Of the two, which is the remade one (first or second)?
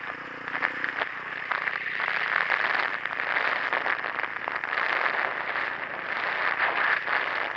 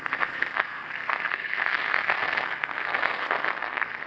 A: second